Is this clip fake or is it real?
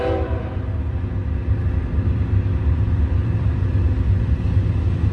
fake